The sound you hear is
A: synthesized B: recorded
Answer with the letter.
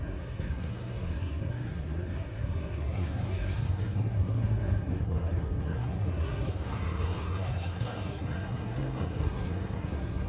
A